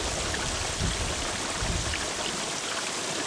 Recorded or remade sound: recorded